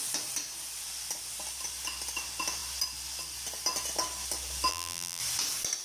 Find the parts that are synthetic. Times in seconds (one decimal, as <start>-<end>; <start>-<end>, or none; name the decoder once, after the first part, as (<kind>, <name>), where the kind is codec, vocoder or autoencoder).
4.7-5.2 (vocoder, BigVGAN v2)